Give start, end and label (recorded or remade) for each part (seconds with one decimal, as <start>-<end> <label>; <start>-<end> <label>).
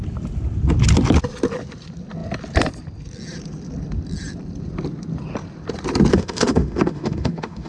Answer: 0.0-6.1 recorded; 6.1-7.7 remade